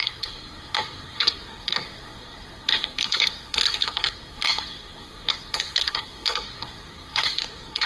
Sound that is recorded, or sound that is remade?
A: remade